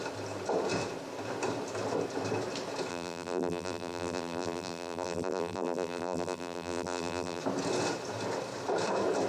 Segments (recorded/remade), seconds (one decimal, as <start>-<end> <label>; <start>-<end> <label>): 0.0-2.9 recorded; 2.9-7.4 remade; 7.4-9.3 recorded